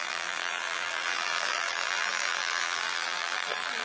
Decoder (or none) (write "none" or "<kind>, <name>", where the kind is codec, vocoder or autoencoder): vocoder, BigVGAN v2